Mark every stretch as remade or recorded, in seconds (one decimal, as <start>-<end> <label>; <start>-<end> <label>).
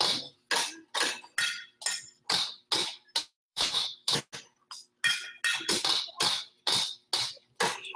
0.0-3.2 recorded; 3.2-4.3 remade; 4.3-8.0 recorded